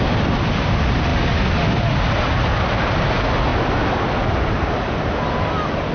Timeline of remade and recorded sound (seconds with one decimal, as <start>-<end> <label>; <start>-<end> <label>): 0.0-5.9 recorded